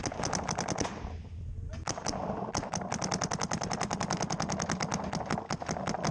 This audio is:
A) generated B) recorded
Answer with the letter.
B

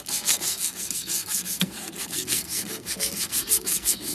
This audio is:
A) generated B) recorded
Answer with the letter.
A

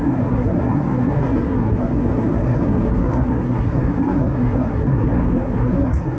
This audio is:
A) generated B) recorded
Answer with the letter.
A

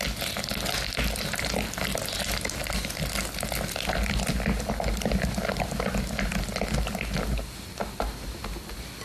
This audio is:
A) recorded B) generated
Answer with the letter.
A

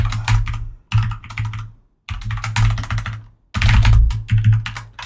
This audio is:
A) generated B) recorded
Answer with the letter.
B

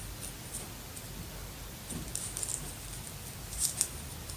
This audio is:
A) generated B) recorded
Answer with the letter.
B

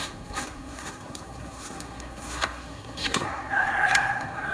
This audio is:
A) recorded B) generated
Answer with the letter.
B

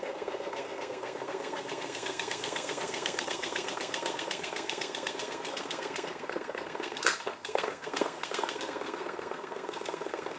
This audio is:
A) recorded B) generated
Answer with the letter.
B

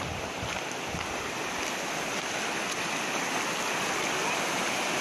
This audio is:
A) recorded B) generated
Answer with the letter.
A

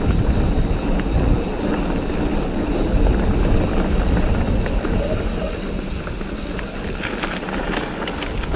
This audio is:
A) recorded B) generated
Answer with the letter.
A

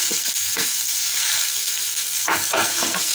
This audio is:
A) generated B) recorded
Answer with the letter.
A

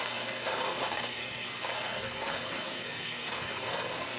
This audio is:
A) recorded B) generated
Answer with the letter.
B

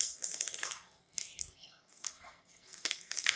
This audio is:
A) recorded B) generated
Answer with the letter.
B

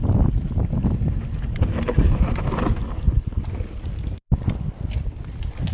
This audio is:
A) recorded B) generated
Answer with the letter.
A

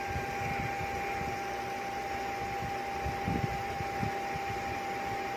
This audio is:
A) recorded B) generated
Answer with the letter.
A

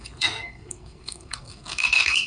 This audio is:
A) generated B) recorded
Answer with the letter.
A